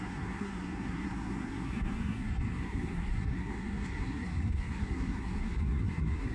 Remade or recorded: remade